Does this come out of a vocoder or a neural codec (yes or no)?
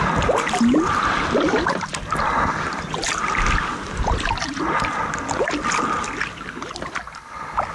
no